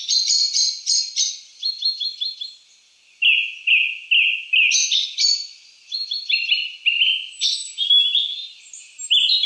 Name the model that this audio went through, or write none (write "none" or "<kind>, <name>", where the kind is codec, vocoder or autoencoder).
none